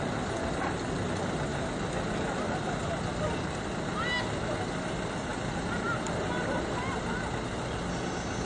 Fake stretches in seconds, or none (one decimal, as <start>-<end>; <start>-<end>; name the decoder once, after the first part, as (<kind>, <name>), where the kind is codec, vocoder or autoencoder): 5.3-6.0 (vocoder, BigVGAN v2)